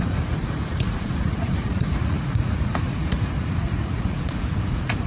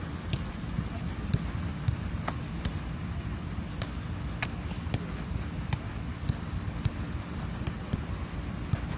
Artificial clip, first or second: first